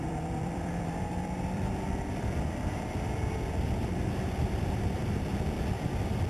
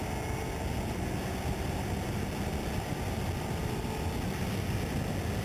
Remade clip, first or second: first